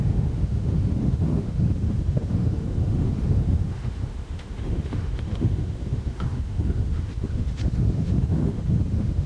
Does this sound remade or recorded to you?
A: remade